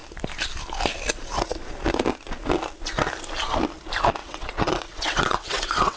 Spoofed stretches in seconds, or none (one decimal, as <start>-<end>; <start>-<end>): 4.2-6.0